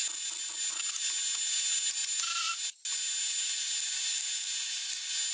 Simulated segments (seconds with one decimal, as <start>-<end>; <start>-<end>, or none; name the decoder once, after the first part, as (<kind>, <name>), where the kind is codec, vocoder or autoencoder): none